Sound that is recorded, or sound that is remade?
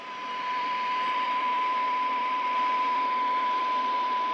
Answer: remade